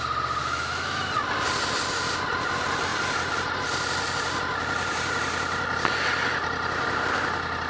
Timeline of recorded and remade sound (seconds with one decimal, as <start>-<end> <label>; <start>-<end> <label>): 0.0-0.4 recorded; 0.4-1.0 remade; 1.0-7.7 recorded